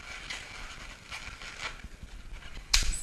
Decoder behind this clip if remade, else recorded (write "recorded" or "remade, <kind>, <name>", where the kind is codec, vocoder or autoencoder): recorded